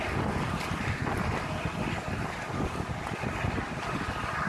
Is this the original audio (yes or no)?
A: yes